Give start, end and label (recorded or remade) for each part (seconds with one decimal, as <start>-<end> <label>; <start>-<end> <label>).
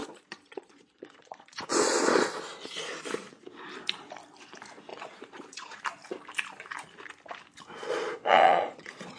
0.0-2.4 remade; 2.4-4.9 recorded; 4.9-5.8 remade; 5.8-7.8 recorded; 7.8-9.2 remade